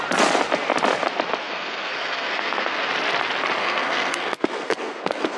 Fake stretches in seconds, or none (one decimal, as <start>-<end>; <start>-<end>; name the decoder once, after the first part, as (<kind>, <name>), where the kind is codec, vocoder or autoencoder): 1.4-2.9 (codec, SNAC); 3.6-5.4